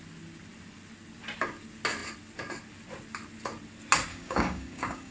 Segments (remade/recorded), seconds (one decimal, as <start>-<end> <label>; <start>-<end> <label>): 0.0-4.1 recorded; 4.1-5.1 remade